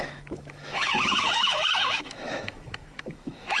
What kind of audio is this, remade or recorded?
remade